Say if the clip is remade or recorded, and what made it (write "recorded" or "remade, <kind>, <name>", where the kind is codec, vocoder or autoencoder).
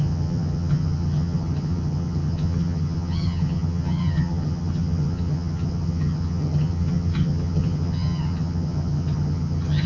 remade, vocoder, HiFi-GAN